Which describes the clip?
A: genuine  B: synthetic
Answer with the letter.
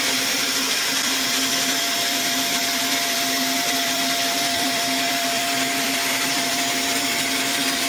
B